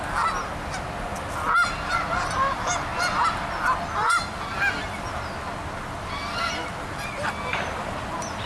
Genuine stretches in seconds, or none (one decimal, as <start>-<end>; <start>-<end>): 0.0-8.5